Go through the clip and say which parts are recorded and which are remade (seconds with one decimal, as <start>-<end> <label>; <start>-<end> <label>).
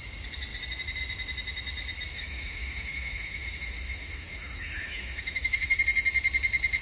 0.0-2.1 recorded; 2.1-5.8 remade; 5.8-6.8 recorded